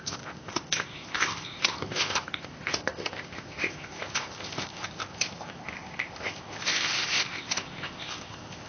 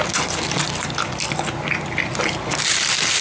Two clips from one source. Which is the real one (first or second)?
second